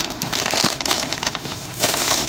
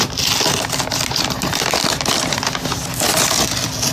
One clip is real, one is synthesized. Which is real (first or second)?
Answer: second